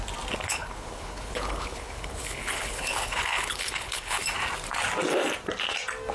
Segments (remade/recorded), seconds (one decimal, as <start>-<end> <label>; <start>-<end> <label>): 0.0-0.5 recorded; 0.5-4.2 remade; 4.2-6.1 recorded